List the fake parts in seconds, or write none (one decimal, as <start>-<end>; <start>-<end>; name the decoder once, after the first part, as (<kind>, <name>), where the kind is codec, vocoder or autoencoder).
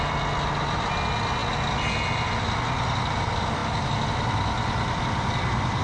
none